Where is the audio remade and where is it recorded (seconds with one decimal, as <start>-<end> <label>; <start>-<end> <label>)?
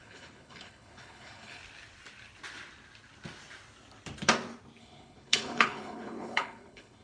0.0-1.6 remade; 1.6-4.8 recorded; 4.8-7.0 remade